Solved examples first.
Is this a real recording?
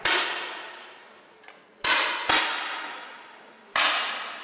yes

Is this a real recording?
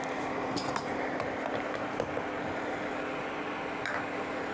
yes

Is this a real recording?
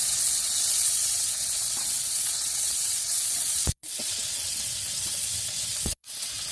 no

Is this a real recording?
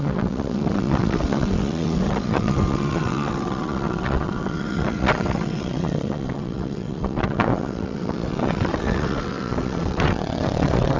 no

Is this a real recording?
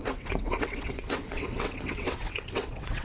no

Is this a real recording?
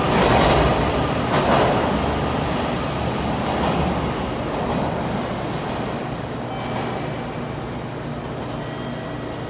yes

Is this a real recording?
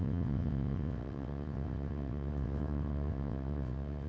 no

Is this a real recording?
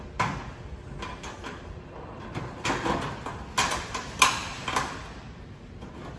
yes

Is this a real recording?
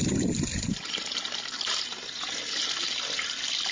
yes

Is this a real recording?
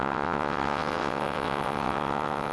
no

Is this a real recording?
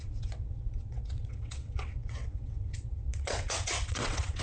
no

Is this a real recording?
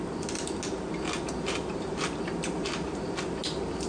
yes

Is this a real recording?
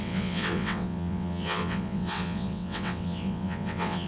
no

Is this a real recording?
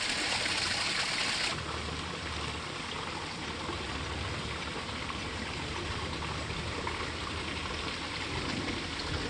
yes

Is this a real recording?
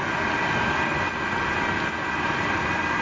yes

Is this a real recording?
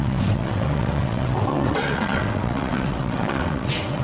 no